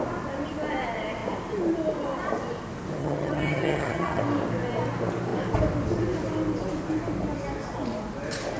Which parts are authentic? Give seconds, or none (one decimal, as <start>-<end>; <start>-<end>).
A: 0.0-3.0; 4.2-8.6